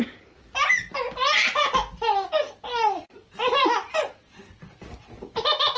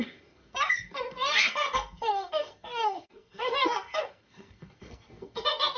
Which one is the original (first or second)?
first